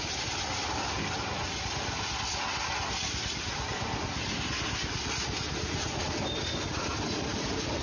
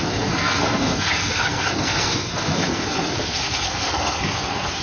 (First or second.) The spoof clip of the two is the second